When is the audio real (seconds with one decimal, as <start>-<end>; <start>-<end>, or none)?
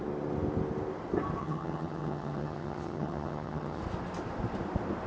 0.0-1.4; 3.8-5.1